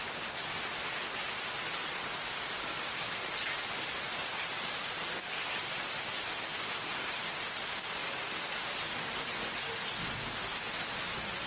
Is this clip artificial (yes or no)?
no